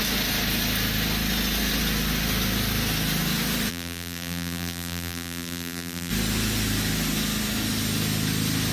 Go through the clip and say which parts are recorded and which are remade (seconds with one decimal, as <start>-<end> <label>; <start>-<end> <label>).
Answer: 0.0-3.7 recorded; 3.7-6.1 remade; 6.1-8.7 recorded